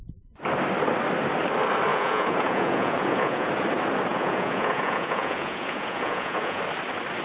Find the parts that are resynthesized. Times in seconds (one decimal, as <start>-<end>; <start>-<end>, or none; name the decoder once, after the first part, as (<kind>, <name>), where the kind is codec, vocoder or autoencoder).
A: 1.9-3.5 (vocoder, Vocos); 4.1-6.6